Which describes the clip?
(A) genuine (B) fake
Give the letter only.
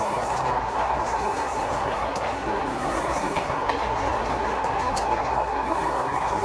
B